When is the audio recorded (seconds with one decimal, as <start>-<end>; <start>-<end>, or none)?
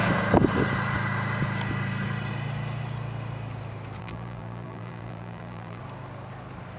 0.0-4.0; 5.8-6.8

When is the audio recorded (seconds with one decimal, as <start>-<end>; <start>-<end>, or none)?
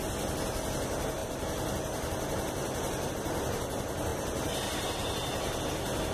0.0-1.2; 3.1-6.1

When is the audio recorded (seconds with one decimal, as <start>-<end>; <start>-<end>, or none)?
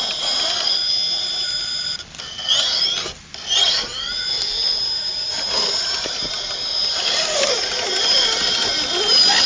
0.0-6.8; 7.5-9.5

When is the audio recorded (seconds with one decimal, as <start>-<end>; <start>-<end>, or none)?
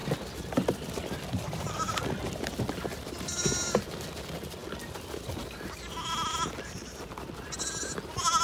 2.6-4.6; 7.8-8.4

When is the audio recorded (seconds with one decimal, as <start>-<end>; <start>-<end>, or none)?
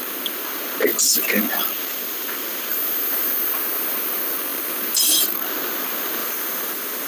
0.0-1.9; 3.3-6.2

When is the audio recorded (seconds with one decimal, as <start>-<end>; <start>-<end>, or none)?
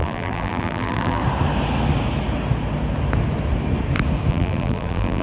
1.2-4.3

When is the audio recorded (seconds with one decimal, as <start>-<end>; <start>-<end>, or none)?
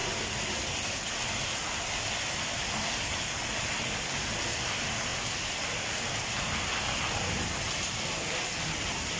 0.0-5.1; 5.9-9.2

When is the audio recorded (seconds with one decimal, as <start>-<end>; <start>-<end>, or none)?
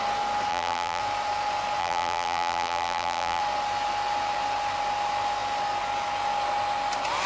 0.0-0.5; 1.0-1.8; 3.4-7.3